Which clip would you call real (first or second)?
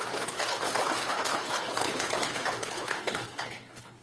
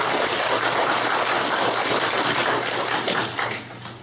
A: second